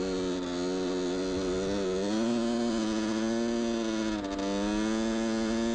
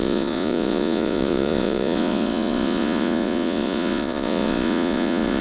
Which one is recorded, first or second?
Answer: first